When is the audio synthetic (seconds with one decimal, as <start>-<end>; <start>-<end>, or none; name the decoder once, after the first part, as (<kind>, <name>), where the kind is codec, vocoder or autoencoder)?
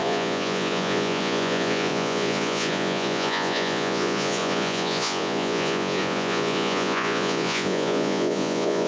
0.0-8.9 (vocoder, Vocos)